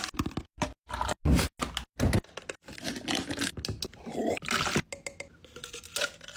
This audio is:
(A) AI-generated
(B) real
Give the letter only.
B